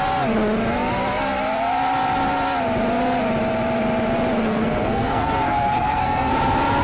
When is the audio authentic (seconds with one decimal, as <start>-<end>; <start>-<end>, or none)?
0.0-4.4; 6.3-6.8